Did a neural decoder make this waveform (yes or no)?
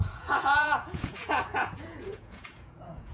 yes